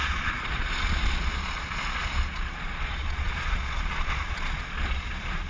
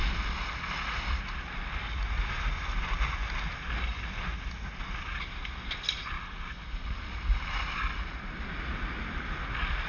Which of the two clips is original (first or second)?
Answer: second